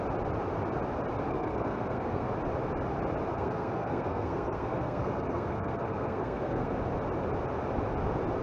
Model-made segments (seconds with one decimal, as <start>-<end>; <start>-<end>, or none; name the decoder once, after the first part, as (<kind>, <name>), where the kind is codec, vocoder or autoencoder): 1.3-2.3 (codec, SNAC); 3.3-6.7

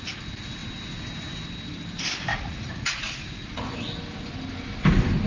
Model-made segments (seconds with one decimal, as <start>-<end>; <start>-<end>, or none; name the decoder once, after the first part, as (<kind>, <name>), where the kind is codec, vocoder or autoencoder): 2.3-3.1 (vocoder, Vocos)

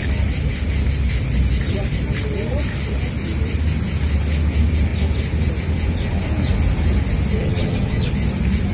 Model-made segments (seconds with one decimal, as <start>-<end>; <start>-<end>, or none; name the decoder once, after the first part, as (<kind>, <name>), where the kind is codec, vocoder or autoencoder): 7.4-8.1 (vocoder, HiFi-GAN)

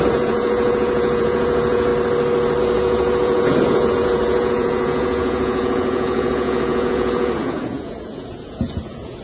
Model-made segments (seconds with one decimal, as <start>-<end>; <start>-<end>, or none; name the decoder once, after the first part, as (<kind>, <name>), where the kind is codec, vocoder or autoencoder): 0.0-1.9 (vocoder, Vocos); 2.6-9.2

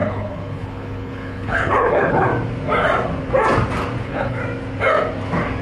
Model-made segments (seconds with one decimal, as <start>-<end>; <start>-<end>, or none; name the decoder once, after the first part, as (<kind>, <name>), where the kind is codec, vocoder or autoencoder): 0.0-2.3 (codec, HILCodec); 4.0-4.4